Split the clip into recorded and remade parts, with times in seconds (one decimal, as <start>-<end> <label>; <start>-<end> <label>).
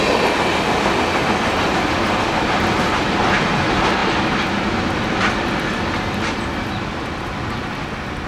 0.0-8.3 recorded